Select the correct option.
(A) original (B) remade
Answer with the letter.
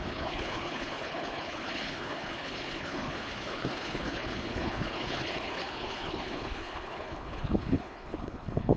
B